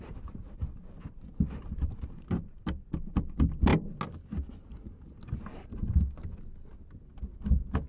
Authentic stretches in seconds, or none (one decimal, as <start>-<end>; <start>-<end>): 0.0-7.9